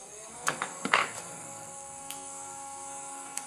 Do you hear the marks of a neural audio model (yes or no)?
yes